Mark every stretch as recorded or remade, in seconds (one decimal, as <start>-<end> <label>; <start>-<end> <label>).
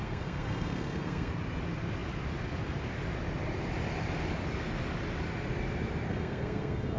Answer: 0.0-1.3 remade; 1.3-6.1 recorded; 6.1-7.0 remade